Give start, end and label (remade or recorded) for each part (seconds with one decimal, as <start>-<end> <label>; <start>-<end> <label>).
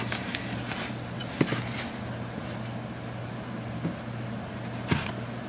0.0-5.5 recorded